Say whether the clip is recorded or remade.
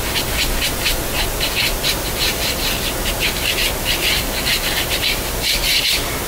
recorded